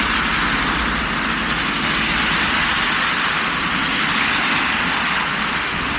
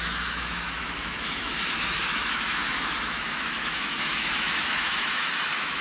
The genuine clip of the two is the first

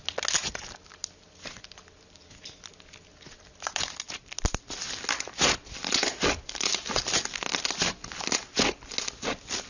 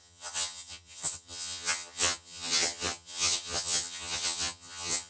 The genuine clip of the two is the first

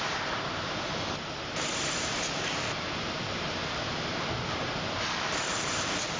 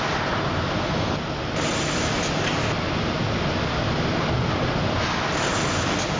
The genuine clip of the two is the second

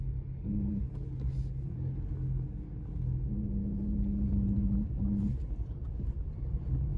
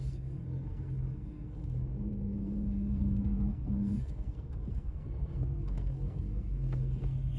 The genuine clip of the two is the first